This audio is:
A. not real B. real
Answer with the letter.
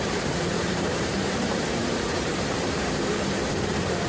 A